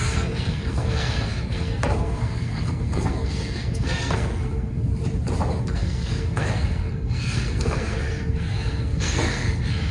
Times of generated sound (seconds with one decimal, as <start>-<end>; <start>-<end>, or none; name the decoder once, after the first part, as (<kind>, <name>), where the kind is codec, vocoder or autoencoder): 0.0-4.9 (codec, SNAC); 5.6-9.9